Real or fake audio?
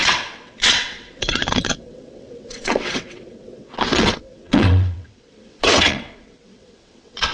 fake